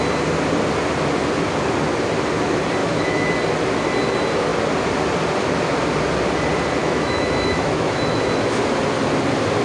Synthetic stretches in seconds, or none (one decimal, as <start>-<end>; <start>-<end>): 2.8-3.3; 6.8-8.6